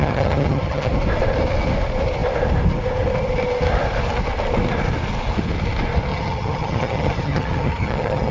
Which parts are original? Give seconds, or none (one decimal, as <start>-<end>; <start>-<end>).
0.9-6.1